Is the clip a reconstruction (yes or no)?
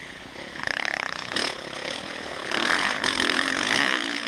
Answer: yes